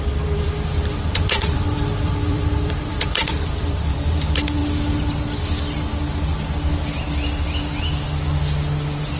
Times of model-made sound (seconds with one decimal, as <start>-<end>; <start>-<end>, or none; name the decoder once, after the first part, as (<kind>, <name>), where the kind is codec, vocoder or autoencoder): 0.0-0.5 (vocoder, BigVGAN v2); 1.1-4.6

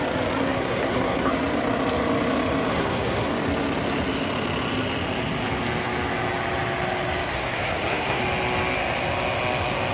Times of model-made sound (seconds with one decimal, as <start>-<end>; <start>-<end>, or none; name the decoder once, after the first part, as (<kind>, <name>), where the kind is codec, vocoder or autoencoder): 0.4-1.3 (codec, SNAC); 2.7-3.3; 7.3-8.2